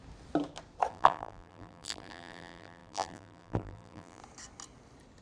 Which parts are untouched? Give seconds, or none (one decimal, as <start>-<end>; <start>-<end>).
0.0-0.9; 4.2-5.2